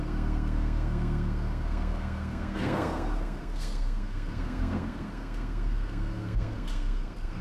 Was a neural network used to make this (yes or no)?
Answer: yes